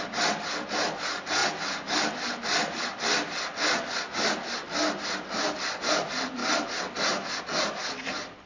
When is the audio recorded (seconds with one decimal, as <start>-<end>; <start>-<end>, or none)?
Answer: 0.0-8.5